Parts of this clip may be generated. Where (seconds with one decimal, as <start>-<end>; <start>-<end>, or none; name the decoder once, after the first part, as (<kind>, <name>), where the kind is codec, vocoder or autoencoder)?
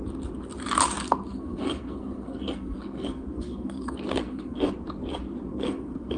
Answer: 1.0-4.7 (codec, SNAC); 5.5-6.2